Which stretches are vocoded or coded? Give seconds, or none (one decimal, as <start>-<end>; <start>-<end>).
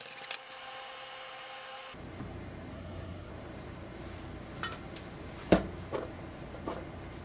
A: 2.7-3.3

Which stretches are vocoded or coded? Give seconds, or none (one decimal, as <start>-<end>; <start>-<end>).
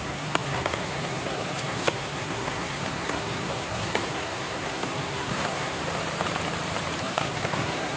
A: 0.0-5.8; 7.0-8.0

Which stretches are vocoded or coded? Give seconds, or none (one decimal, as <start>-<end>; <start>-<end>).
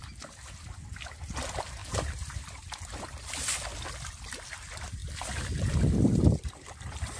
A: none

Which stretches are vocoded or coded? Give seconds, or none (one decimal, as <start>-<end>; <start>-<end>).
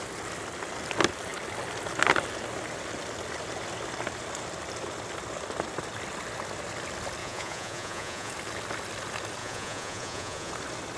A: 7.2-8.3; 9.4-10.5